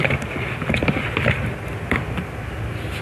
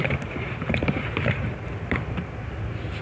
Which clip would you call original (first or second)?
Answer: first